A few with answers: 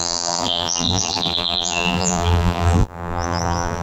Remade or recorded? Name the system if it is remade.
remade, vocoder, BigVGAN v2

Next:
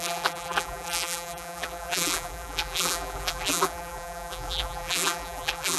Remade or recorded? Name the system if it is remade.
remade, vocoder, BigVGAN v2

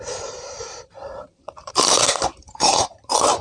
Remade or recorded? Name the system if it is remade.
remade, vocoder, BigVGAN v2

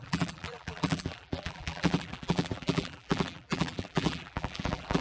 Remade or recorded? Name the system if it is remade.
remade, vocoder, BigVGAN v2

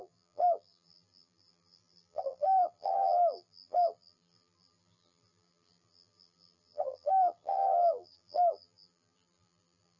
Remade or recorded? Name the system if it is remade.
remade, vocoder, BigVGAN v2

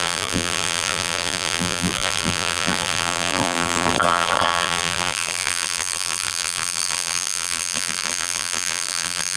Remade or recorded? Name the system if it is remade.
remade, vocoder, BigVGAN v2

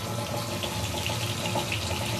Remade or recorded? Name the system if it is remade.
recorded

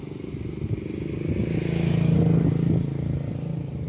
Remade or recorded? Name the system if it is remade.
recorded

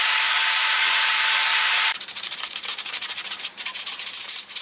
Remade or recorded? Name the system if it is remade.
remade, vocoder, BigVGAN v2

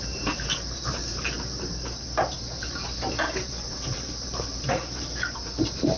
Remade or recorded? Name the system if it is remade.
remade, vocoder, BigVGAN v2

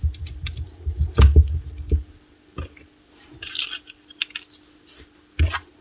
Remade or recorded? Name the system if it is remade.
recorded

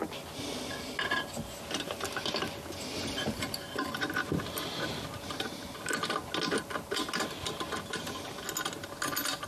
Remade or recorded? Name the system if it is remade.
recorded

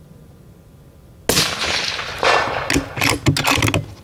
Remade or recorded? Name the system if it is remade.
recorded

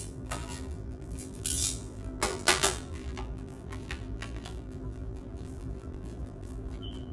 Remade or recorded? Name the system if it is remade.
remade, vocoder, BigVGAN v2